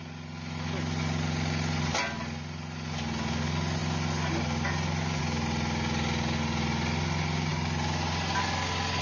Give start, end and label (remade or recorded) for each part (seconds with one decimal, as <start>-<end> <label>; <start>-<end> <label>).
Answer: 0.0-9.0 recorded